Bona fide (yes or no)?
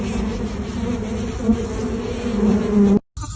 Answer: yes